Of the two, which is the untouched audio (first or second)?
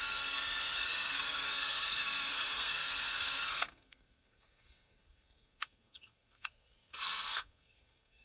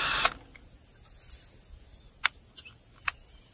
second